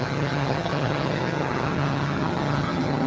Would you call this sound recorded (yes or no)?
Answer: no